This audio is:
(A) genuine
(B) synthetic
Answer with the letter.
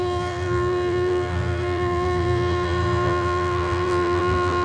B